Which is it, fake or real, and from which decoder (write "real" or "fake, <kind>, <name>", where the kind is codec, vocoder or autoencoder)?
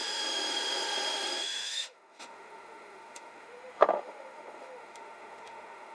fake, autoencoder, DAC-VAE